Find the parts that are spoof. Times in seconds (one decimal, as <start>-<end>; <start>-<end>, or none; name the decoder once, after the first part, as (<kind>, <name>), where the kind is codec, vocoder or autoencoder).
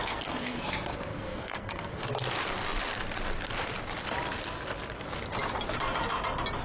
0.0-0.6 (codec, SNAC); 1.1-2.1